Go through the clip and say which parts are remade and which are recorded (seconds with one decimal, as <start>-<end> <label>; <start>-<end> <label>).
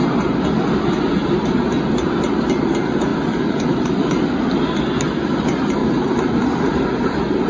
0.0-3.1 recorded; 3.1-4.2 remade; 4.2-5.8 recorded; 5.8-6.7 remade; 6.7-7.5 recorded